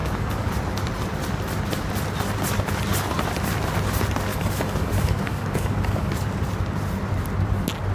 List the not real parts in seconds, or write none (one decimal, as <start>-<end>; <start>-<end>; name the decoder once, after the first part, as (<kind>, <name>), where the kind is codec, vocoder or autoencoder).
0.0-0.5 (codec, DAC); 4.3-6.1